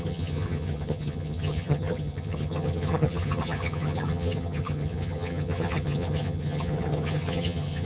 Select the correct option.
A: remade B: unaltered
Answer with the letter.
A